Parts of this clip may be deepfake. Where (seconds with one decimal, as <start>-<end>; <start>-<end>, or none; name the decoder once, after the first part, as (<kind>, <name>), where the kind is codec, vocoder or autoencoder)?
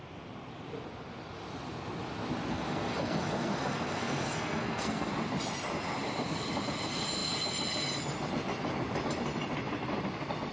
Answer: 2.5-5.1 (codec, SNAC)